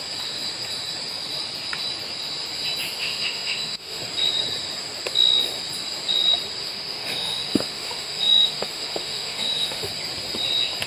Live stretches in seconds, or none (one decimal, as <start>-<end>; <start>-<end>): 0.0-3.0; 4.0-6.6; 9.9-10.9